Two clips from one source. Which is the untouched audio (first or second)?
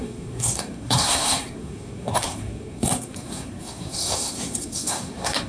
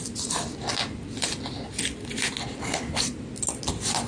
second